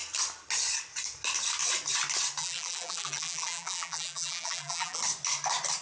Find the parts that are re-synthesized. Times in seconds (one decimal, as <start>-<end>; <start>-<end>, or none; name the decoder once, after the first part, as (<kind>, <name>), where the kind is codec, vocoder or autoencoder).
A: 2.4-5.0 (vocoder, BigVGAN v2)